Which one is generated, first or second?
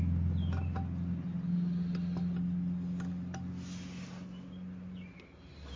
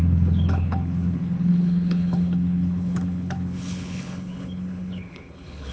second